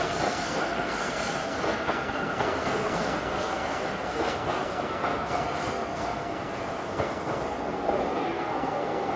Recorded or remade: remade